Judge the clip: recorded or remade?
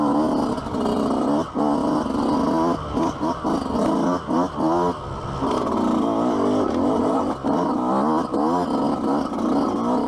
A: recorded